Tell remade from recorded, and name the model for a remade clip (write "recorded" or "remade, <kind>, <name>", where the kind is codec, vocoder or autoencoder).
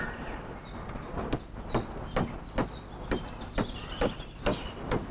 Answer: recorded